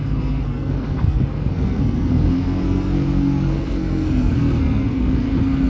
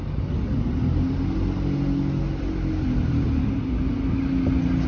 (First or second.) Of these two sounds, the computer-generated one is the first